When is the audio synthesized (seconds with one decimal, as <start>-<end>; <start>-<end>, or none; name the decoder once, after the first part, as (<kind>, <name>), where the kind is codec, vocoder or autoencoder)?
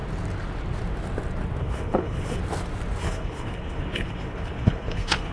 1.6-2.4 (codec, HILCodec); 3.0-5.3